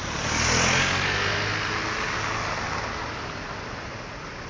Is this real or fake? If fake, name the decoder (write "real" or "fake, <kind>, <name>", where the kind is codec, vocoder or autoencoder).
real